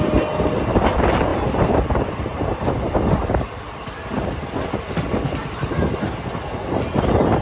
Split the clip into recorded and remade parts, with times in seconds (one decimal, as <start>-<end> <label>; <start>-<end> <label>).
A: 0.0-1.3 recorded; 1.3-5.7 remade; 5.7-7.4 recorded